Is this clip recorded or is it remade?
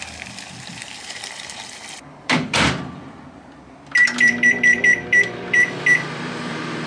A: remade